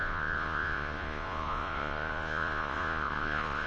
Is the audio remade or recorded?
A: remade